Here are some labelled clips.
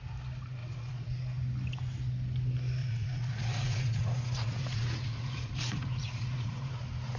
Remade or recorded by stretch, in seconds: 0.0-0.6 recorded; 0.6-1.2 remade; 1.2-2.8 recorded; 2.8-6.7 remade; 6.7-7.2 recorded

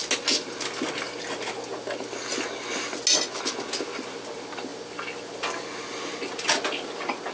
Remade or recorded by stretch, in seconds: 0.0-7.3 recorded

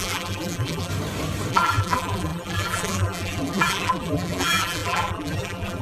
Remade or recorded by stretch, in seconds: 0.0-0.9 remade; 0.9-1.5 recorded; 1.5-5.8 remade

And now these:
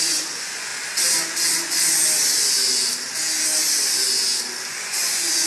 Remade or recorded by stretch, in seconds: 0.0-0.7 remade; 0.7-1.5 recorded; 1.5-2.0 remade; 2.0-4.7 recorded; 4.7-5.5 remade

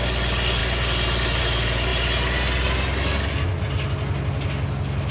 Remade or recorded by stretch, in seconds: 0.0-5.1 recorded